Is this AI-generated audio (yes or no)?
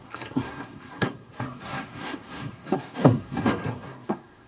yes